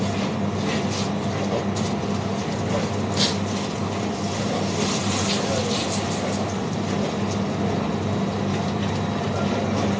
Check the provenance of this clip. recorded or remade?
recorded